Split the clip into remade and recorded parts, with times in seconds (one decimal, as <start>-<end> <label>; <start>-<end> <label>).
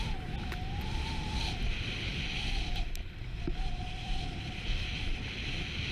0.0-5.9 recorded